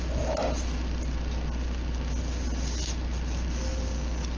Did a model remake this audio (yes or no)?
no